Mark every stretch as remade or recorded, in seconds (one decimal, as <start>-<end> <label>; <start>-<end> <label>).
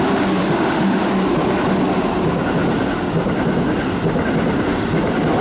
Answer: 0.0-0.4 recorded; 0.4-1.1 remade; 1.1-5.4 recorded